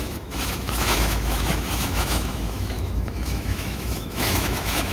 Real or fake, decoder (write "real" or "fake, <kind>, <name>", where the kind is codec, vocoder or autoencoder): fake, autoencoder, DAC-VAE